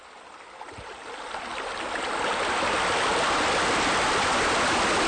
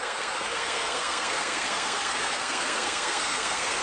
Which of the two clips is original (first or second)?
first